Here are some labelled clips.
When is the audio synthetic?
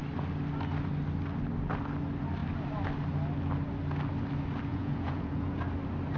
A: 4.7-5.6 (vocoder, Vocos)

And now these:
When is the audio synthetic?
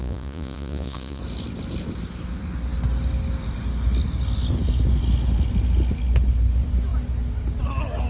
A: 0.0-1.2 (vocoder, Vocos)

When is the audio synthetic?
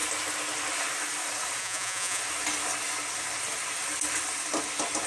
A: 1.6-2.2 (vocoder, Vocos)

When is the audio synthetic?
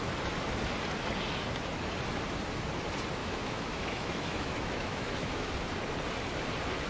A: 3.2-5.5 (autoencoder, DAC-VAE)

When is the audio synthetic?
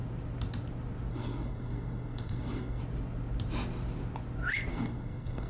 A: 1.1-2.8 (codec, SNAC); 4.7-5.5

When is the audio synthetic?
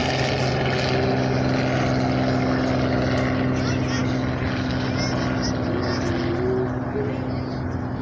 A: none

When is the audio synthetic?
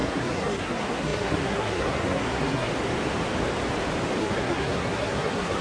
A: 0.0-2.7 (codec, SNAC); 4.2-5.6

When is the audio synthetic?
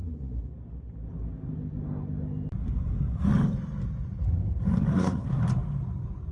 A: 2.6-3.3 (codec, SNAC); 4.9-5.4